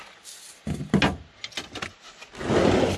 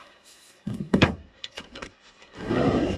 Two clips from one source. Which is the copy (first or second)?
second